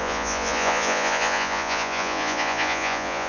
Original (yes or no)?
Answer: no